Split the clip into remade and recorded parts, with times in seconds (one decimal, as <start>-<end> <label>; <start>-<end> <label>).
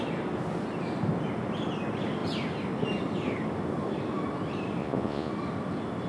0.0-4.8 recorded; 4.8-5.3 remade; 5.3-6.1 recorded